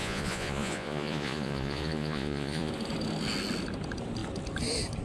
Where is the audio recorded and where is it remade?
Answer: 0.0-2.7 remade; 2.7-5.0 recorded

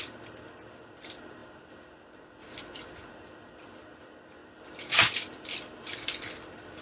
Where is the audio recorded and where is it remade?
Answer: 0.0-6.8 recorded

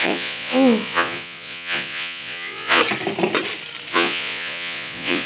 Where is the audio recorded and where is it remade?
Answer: 0.0-2.8 remade; 2.8-3.9 recorded; 3.9-5.3 remade

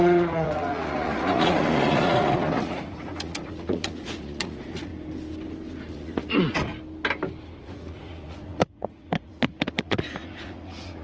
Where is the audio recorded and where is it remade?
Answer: 0.0-4.9 remade; 4.9-5.9 recorded; 5.9-6.7 remade; 6.7-7.6 recorded; 7.6-11.0 remade

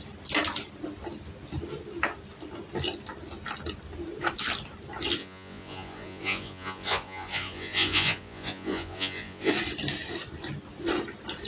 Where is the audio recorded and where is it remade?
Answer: 0.0-5.2 recorded; 5.2-9.5 remade; 9.5-11.5 recorded